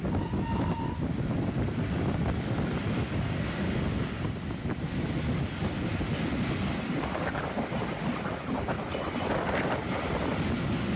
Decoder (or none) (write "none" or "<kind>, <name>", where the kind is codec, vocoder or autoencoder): none